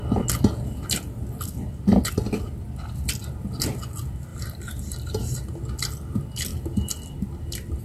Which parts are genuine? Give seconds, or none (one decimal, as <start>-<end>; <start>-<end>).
0.0-4.3; 5.6-6.5